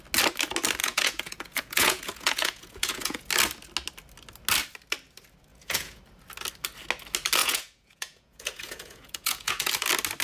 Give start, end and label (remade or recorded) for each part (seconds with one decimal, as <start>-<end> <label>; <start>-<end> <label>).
0.0-0.8 recorded; 0.8-3.3 remade; 3.3-5.5 recorded; 5.5-6.0 remade; 6.0-7.4 recorded; 7.4-9.7 remade; 9.7-10.2 recorded